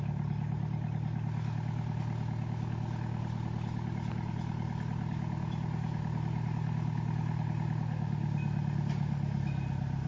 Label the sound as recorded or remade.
recorded